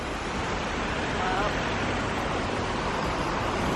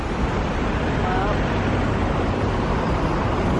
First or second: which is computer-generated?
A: first